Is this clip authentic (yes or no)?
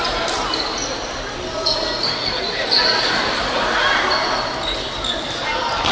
yes